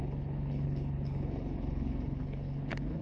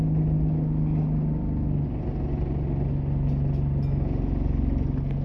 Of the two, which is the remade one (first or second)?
first